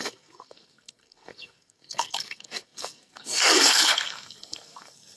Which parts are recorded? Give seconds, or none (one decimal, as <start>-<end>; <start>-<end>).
none